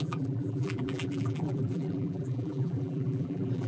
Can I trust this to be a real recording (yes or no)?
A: no